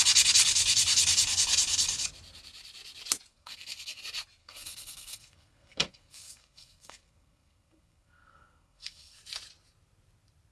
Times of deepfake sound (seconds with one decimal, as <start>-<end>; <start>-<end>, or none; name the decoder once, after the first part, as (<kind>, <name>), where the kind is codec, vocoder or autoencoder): 3.3-4.0 (codec, SNAC); 4.4-9.2